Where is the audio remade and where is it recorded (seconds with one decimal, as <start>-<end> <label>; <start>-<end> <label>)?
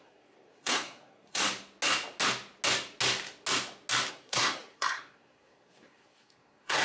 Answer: 0.0-1.4 remade; 1.4-4.1 recorded; 4.1-6.8 remade